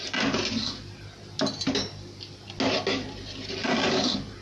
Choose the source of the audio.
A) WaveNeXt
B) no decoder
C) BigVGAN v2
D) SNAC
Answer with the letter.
B